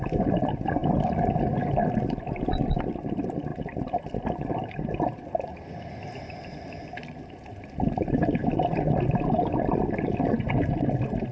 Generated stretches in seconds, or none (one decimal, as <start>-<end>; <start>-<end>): none